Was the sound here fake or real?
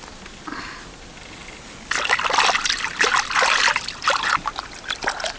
real